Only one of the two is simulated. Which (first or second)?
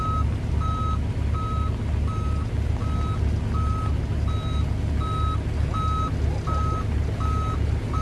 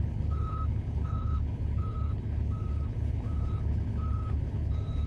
second